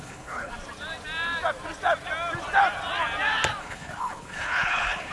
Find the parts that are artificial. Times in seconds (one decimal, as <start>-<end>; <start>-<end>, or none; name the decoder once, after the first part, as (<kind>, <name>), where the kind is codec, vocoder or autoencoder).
0.0-0.5 (codec, HILCodec); 3.6-5.1